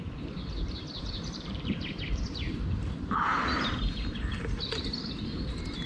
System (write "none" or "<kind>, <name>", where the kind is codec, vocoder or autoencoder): vocoder, BigVGAN v2